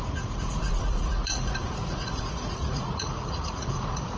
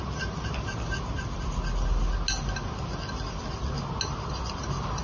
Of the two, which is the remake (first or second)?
first